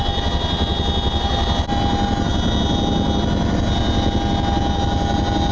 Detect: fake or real real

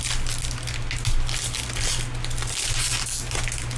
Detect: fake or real real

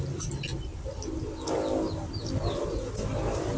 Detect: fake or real real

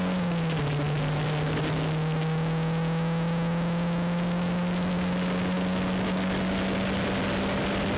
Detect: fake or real real